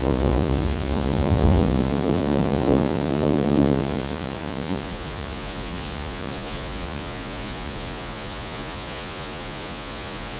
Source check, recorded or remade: remade